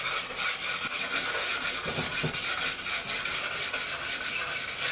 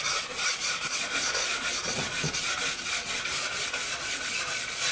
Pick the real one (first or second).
first